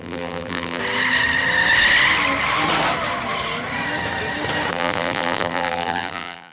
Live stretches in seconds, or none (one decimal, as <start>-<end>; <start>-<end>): 0.8-4.7